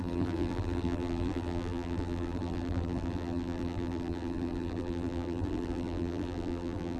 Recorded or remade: remade